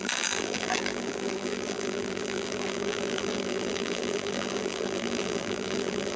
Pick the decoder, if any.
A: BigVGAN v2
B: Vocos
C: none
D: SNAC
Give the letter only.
A